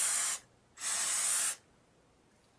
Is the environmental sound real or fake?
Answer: real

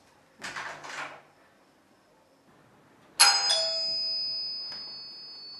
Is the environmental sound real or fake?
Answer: real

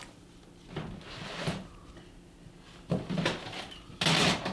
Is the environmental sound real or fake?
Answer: real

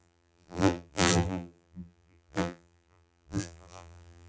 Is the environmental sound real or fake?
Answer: fake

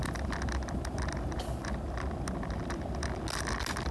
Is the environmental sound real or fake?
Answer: real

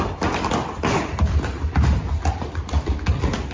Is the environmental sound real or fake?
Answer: real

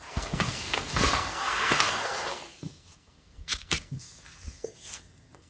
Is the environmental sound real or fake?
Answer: fake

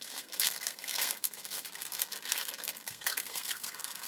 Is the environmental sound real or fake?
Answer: fake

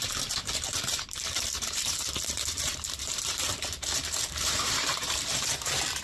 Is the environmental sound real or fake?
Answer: fake